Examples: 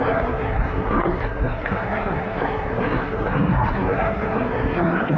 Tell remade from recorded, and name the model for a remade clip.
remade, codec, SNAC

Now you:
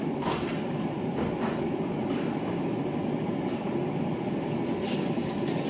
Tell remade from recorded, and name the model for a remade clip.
recorded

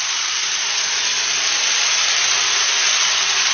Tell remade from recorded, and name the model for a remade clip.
recorded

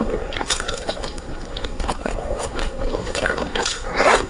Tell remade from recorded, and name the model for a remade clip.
remade, codec, SNAC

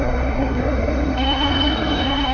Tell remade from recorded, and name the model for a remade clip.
remade, codec, SNAC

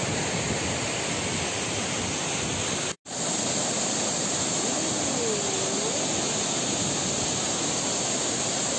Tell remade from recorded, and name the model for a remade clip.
recorded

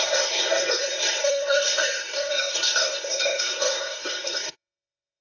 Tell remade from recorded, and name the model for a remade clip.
remade, codec, SNAC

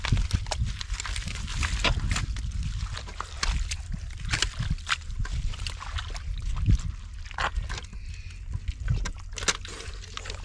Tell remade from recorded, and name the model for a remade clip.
recorded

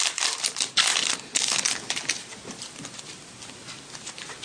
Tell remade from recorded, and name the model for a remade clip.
recorded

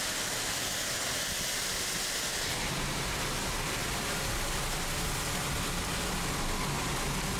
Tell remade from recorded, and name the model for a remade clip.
recorded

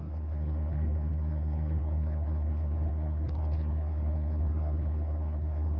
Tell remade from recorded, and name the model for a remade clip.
remade, codec, SNAC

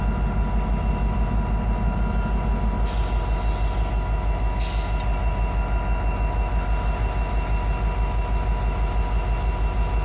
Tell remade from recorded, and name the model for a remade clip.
recorded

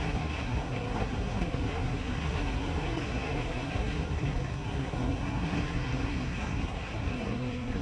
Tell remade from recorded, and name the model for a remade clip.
remade, codec, SNAC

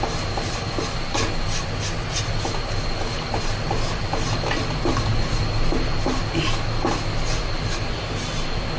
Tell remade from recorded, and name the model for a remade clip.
recorded